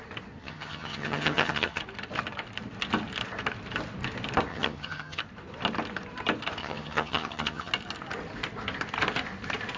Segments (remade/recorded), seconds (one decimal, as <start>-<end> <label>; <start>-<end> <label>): 0.0-0.4 recorded; 0.4-1.8 remade; 1.8-4.5 recorded; 4.5-5.2 remade; 5.2-6.6 recorded; 6.6-7.7 remade; 7.7-9.8 recorded